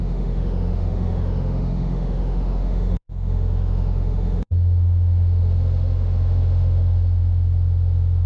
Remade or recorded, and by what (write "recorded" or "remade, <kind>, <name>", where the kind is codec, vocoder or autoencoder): remade, autoencoder, DAC-VAE